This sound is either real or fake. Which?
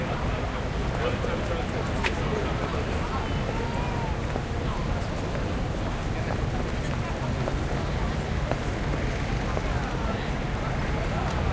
real